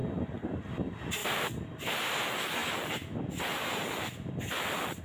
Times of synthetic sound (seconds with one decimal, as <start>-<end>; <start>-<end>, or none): 1.2-2.0; 2.6-5.0